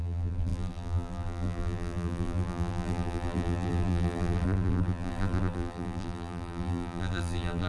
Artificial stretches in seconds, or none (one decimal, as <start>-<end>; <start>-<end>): 0.0-7.7